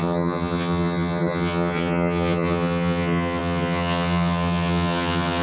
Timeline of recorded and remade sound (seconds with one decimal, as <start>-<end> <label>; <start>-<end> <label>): 0.0-5.4 remade